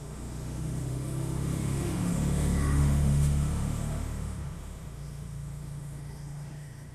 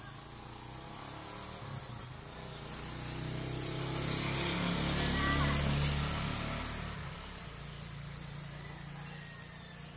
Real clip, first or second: second